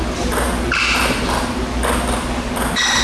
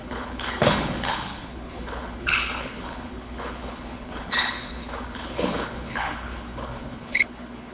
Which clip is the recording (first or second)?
first